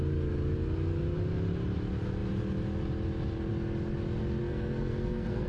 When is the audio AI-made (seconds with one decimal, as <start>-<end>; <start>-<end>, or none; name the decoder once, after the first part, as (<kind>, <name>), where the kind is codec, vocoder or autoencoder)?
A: 4.4-5.5 (codec, SNAC)